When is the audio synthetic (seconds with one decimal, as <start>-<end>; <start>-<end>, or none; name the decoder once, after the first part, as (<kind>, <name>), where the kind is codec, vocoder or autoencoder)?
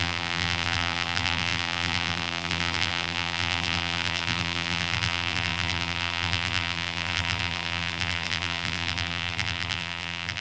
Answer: 0.0-10.4 (vocoder, BigVGAN v2)